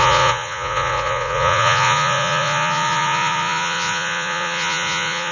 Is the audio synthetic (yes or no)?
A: yes